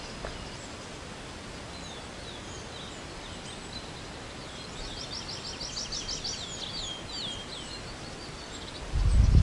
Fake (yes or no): no